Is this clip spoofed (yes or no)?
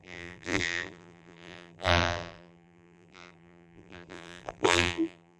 yes